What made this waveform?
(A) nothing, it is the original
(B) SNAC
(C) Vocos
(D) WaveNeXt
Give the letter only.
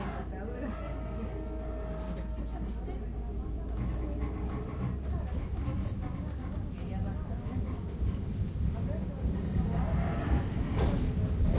A